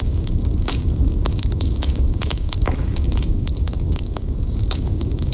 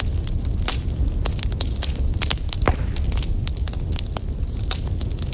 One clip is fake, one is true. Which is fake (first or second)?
first